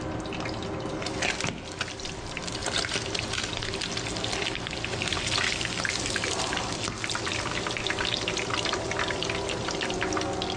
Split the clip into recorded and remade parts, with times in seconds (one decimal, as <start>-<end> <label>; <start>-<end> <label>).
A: 0.0-10.6 recorded